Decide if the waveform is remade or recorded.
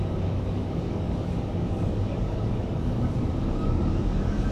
remade